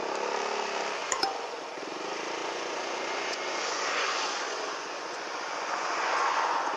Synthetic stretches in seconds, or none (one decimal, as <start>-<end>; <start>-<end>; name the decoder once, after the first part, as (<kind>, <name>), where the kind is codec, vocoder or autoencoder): 1.0-1.6 (vocoder, Vocos); 2.4-6.8